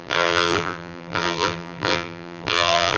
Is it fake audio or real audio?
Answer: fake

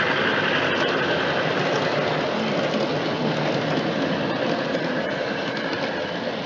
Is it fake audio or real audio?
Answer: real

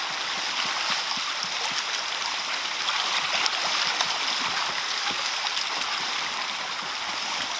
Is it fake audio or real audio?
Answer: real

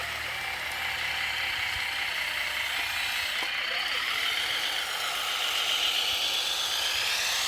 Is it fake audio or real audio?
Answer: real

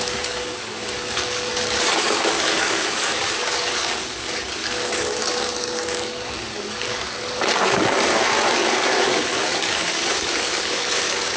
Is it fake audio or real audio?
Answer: fake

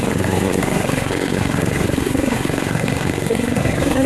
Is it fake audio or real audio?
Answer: fake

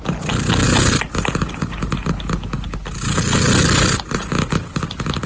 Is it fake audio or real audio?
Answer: real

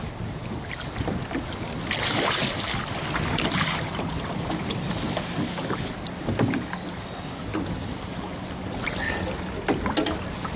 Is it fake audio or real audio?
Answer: real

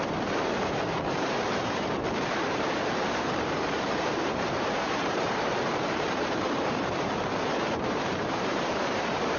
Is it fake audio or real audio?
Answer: fake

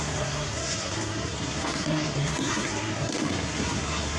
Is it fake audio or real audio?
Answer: fake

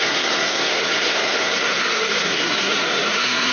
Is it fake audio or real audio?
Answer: fake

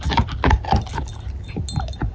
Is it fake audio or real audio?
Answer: real